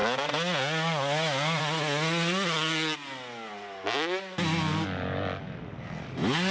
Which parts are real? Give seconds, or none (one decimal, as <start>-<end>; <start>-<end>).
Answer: 0.0-6.5